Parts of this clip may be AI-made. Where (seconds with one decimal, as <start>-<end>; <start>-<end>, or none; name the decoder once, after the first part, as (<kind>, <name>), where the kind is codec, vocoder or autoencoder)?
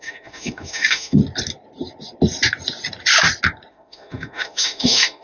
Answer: 0.0-1.2 (autoencoder, DAC-VAE); 3.7-5.2